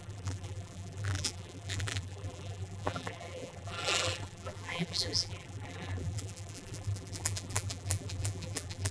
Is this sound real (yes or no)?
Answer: no